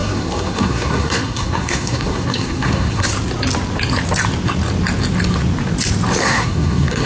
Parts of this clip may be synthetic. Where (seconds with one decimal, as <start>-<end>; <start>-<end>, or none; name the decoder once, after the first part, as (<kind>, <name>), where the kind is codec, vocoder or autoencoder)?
0.0-3.1 (codec, SNAC); 6.2-7.1